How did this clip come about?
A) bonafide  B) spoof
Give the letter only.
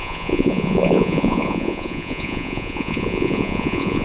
B